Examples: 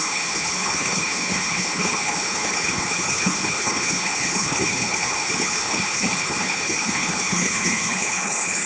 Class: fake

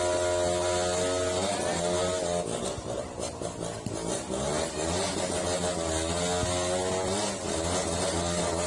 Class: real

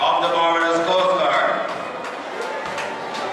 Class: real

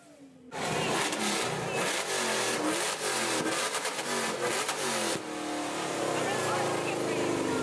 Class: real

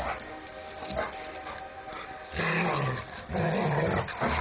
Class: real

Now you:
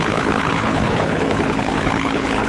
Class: fake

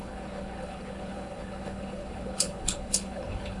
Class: fake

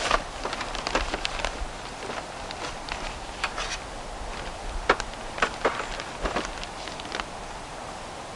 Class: real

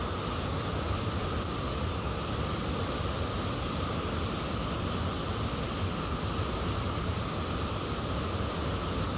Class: real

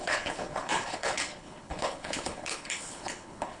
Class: fake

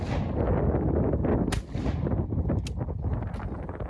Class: real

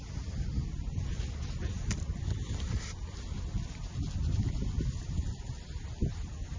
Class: real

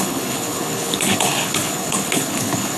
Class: fake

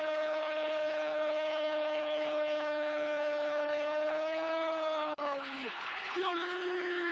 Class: fake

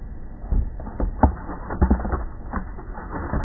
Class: real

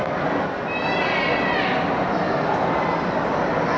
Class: real